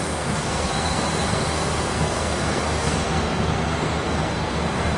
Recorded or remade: remade